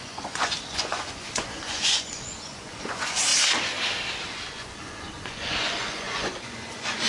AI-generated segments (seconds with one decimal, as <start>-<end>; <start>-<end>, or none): 0.0-3.3; 4.3-7.1

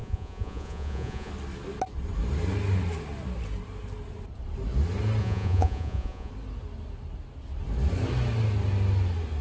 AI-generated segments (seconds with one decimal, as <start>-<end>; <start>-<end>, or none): 0.0-1.3; 5.2-6.3

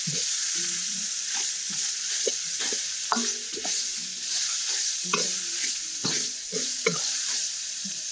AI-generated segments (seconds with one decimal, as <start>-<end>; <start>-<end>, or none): 0.0-2.3; 3.5-8.1

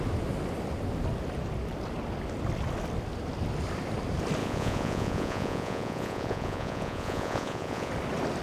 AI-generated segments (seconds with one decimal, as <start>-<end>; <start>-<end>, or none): 4.4-7.9

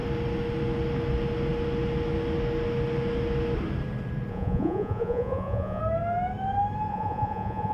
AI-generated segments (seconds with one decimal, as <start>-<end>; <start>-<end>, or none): 4.3-5.8; 6.9-7.7